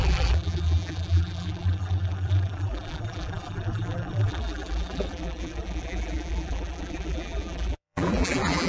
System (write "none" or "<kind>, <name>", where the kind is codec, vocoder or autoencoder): vocoder, BigVGAN v2